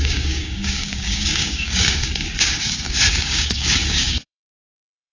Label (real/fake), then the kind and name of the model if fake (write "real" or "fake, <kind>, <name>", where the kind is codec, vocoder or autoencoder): fake, codec, DAC